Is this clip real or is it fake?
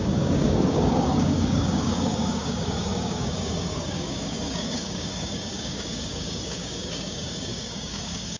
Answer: fake